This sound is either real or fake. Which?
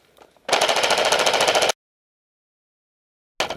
real